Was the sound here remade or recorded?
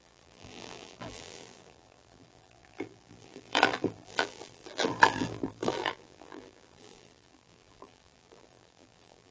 remade